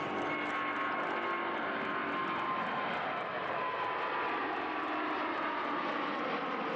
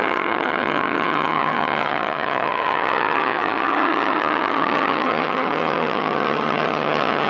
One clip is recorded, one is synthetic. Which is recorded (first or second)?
first